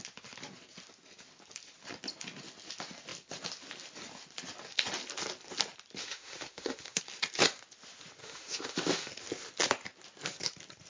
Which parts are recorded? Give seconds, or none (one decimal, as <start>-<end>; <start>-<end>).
0.0-6.0; 7.0-8.2; 9.1-10.9